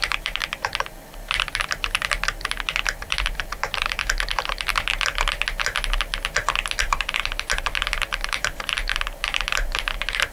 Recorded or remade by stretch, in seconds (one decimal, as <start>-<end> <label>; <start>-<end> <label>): 0.0-0.4 remade; 0.4-3.0 recorded; 3.0-4.7 remade; 4.7-6.8 recorded; 6.8-10.3 remade

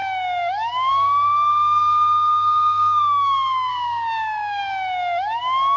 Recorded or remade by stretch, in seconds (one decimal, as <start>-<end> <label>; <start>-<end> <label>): 0.0-0.9 recorded; 0.9-4.6 remade; 4.6-5.8 recorded

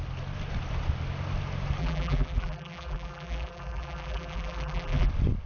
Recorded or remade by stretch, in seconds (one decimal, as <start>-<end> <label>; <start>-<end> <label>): 0.0-1.8 recorded; 1.8-5.1 remade; 5.1-5.5 recorded

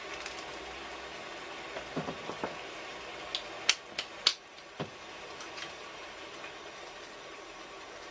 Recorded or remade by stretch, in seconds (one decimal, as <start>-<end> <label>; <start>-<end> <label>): 0.0-4.3 recorded; 4.3-8.1 remade

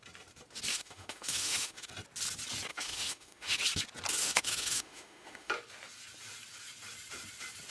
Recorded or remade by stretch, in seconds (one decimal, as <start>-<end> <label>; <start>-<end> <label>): 0.0-0.7 recorded; 0.7-1.9 remade; 1.9-2.7 recorded; 2.7-3.6 remade; 3.6-4.2 recorded; 4.2-5.5 remade; 5.5-7.7 recorded

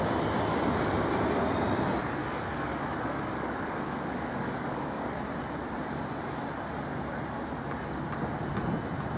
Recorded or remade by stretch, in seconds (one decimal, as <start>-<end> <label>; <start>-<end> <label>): 0.0-2.2 recorded; 2.2-5.2 remade; 5.2-9.2 recorded

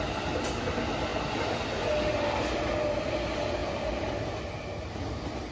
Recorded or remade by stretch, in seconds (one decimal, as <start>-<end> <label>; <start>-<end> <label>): 0.0-3.6 recorded; 3.6-4.1 remade; 4.1-5.5 recorded

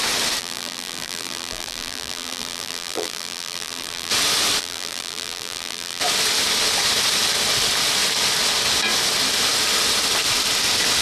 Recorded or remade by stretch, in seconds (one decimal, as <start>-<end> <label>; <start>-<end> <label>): 0.0-0.4 recorded; 0.4-4.1 remade; 4.1-4.6 recorded; 4.6-6.0 remade; 6.0-11.0 recorded